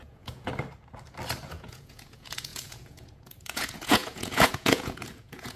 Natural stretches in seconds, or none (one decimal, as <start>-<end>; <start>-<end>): 0.5-1.5